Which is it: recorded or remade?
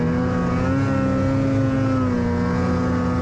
recorded